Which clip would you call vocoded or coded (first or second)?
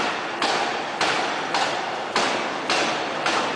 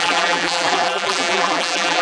second